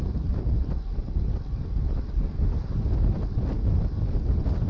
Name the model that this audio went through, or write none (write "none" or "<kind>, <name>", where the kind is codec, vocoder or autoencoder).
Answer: none